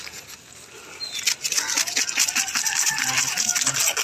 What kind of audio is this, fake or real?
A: real